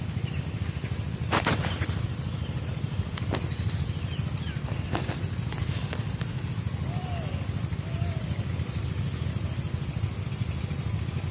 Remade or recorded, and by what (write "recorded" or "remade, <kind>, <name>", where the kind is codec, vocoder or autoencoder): recorded